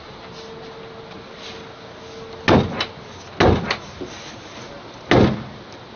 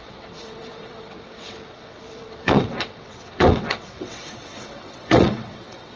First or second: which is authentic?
first